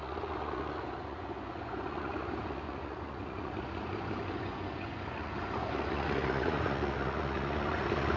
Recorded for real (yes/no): no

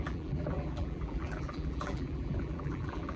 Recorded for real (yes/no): no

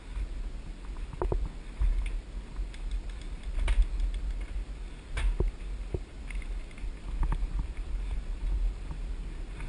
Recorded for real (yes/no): yes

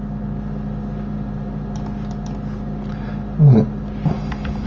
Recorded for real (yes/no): yes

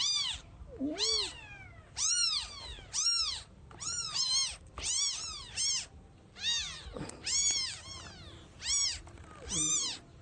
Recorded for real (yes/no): yes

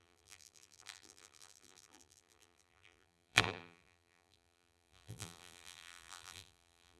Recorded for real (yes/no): no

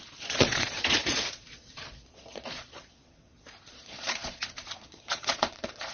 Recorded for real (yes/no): no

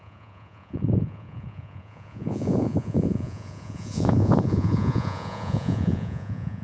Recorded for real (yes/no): no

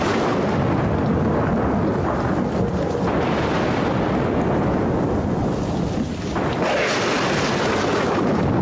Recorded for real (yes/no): yes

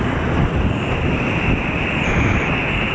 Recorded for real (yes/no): yes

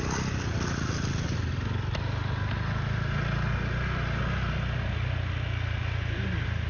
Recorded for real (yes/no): yes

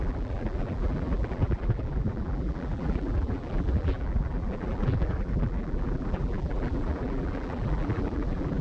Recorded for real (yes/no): no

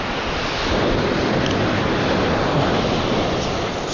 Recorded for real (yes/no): yes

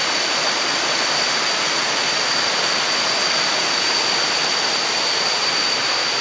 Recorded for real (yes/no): yes